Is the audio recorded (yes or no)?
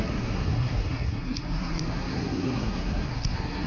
no